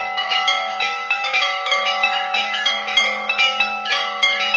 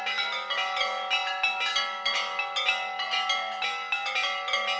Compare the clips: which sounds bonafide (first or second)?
second